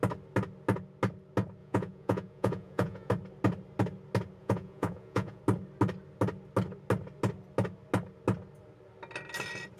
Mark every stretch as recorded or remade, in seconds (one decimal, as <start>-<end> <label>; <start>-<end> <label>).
0.0-1.6 recorded; 1.6-3.1 remade; 3.1-4.4 recorded; 4.4-5.4 remade; 5.4-9.8 recorded